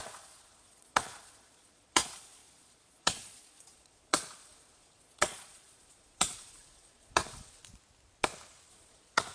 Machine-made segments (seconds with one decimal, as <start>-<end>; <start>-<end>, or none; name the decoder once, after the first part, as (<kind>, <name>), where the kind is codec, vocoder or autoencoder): 0.0-7.6 (vocoder, Vocos); 8.7-9.3